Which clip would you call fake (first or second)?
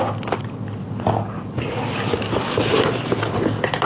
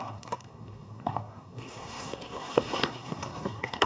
second